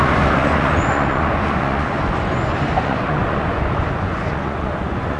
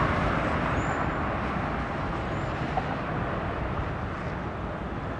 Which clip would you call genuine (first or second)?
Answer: second